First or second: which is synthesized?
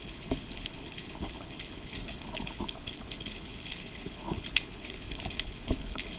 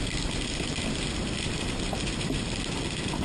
first